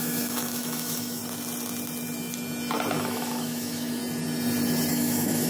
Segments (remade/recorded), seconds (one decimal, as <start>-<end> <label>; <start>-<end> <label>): 0.0-1.2 remade; 1.2-3.0 recorded; 3.0-4.0 remade; 4.0-4.9 recorded; 4.9-5.5 remade